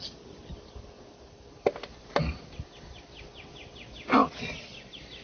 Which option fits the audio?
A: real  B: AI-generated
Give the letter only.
A